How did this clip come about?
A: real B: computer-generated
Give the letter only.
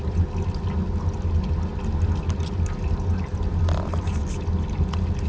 A